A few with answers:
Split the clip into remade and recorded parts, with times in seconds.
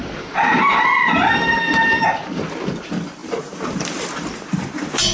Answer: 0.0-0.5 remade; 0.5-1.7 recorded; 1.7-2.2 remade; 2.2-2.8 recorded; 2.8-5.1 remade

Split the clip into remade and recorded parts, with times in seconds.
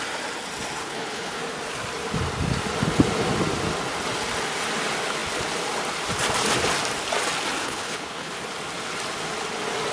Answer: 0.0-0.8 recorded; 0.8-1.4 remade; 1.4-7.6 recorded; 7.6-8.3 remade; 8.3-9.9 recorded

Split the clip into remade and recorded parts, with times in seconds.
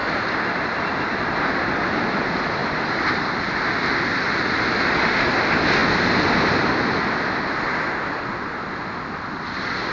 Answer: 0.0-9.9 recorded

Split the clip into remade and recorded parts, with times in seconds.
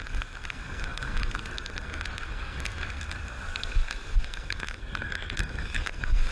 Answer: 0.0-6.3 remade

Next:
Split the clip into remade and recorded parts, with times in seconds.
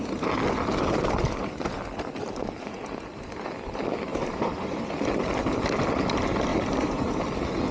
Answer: 0.0-4.1 recorded; 4.1-4.8 remade; 4.8-6.5 recorded; 6.5-7.2 remade; 7.2-7.7 recorded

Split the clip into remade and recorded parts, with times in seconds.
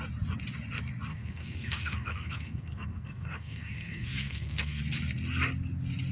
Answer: 0.0-1.1 recorded; 1.1-4.8 remade; 4.8-6.1 recorded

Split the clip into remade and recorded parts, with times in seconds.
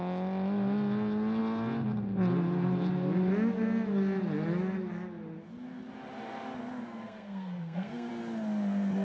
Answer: 0.0-7.0 recorded; 7.0-8.1 remade; 8.1-9.0 recorded